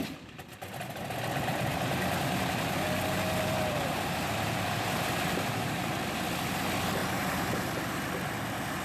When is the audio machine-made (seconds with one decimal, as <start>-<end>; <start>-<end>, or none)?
1.5-5.9; 7.0-7.8